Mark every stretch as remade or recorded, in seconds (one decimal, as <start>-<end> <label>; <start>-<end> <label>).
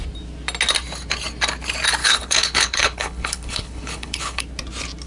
0.0-2.0 recorded; 2.0-4.4 remade; 4.4-5.1 recorded